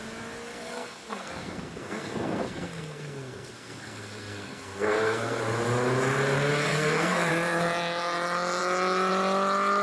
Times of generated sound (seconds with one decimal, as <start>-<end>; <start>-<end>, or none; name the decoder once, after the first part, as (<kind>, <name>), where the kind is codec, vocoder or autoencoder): 0.5-5.4 (codec, SNAC); 6.7-7.3